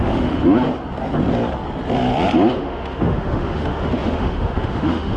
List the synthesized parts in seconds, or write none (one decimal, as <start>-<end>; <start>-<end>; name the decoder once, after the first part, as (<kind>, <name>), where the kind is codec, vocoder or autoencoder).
0.0-0.4 (autoencoder, DAC-VAE); 2.6-5.2